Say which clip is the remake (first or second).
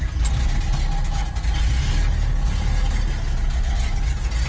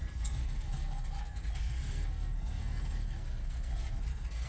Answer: second